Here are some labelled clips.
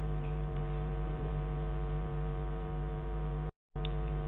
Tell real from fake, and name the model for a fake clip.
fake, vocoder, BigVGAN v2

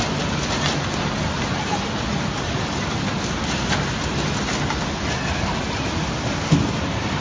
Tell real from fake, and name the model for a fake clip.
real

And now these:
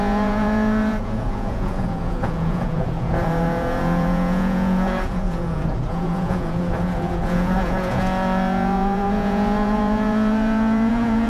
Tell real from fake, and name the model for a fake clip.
fake, vocoder, Vocos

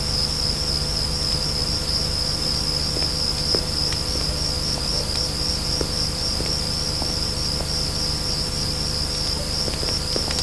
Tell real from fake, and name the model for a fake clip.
fake, vocoder, BigVGAN v2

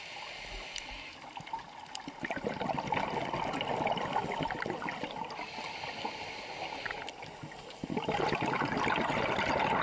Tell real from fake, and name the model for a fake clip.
real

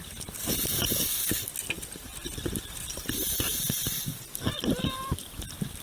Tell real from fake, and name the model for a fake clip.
real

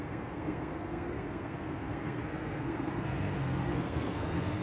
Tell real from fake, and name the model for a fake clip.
fake, codec, SNAC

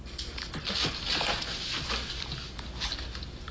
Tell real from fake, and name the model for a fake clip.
real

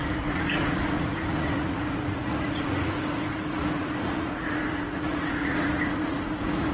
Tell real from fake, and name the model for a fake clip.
fake, vocoder, Vocos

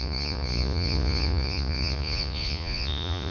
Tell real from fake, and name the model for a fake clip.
fake, vocoder, Vocos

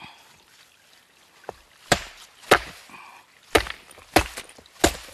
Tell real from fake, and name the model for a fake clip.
real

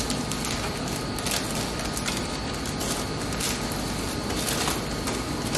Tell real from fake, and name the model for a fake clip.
real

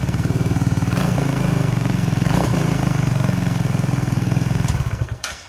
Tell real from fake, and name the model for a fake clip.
fake, codec, SNAC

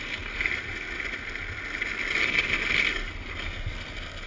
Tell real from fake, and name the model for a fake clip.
real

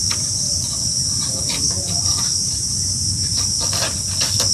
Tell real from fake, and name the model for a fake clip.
real